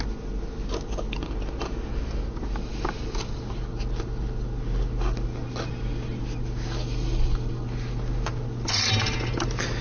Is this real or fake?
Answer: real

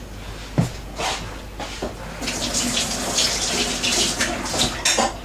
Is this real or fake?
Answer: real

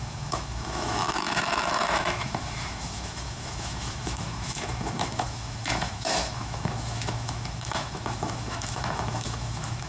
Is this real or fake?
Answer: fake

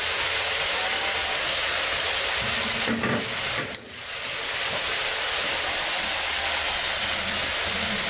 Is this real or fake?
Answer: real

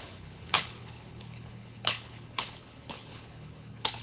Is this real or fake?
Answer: fake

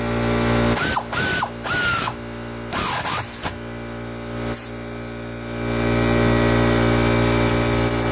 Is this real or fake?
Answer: real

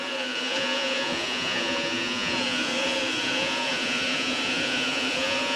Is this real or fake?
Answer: fake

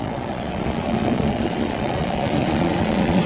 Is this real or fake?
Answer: fake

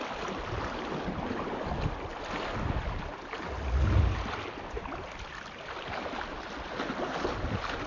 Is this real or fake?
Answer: real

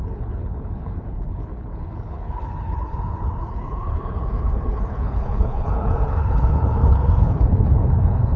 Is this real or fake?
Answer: fake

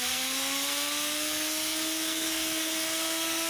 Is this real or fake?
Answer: fake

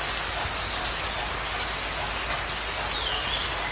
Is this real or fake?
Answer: real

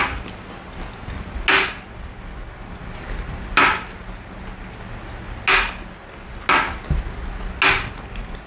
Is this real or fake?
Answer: real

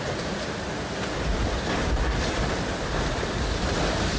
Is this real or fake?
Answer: fake